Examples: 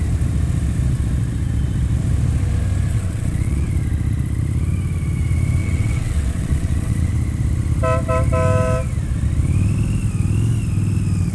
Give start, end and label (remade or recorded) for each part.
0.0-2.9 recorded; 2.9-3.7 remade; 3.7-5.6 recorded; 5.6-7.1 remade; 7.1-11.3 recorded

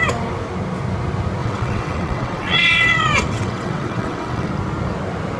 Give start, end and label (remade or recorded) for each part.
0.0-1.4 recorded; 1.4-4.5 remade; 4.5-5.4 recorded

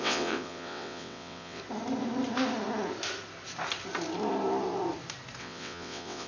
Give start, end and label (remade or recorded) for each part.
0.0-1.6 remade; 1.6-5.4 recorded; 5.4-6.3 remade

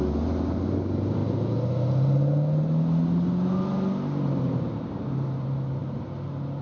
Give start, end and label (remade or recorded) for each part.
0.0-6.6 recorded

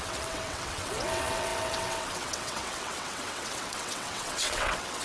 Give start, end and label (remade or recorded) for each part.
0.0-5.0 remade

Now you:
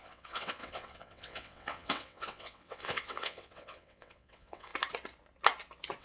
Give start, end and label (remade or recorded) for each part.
0.0-4.7 remade; 4.7-6.0 recorded

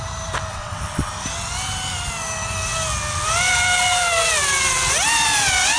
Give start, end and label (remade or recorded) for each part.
0.0-0.5 recorded; 0.5-1.1 remade; 1.1-5.8 recorded

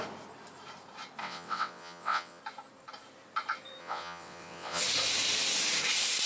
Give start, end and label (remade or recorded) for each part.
0.0-1.2 recorded; 1.2-2.4 remade; 2.4-3.8 recorded; 3.8-4.8 remade; 4.8-6.3 recorded